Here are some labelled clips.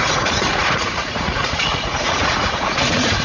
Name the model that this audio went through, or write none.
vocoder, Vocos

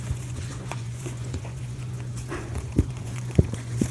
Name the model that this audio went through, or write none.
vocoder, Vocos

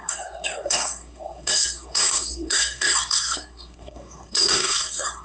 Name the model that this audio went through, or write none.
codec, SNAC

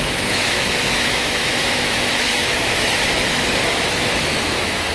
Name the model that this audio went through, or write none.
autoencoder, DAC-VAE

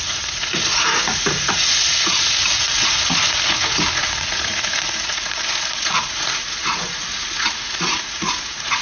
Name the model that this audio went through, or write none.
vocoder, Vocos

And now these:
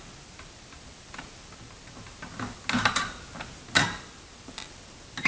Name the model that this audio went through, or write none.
none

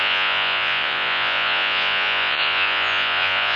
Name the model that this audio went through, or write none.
vocoder, Vocos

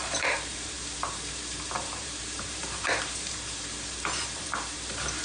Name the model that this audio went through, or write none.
vocoder, BigVGAN v2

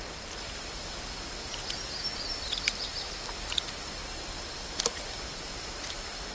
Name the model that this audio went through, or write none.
none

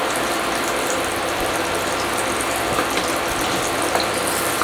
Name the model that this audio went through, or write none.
none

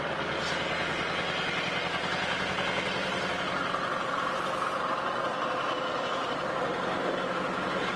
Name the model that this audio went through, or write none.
none